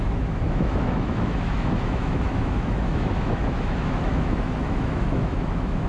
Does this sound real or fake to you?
fake